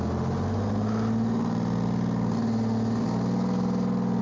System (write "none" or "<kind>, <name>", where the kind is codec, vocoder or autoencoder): none